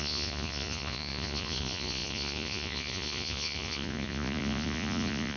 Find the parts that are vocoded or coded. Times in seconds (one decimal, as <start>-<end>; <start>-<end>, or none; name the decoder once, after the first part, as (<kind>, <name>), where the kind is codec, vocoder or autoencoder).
0.0-5.4 (vocoder, Vocos)